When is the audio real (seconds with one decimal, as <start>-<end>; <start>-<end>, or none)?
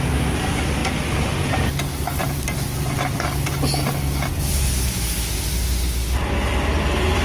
0.0-2.1; 3.5-7.2